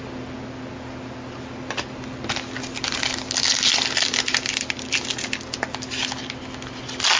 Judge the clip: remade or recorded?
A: recorded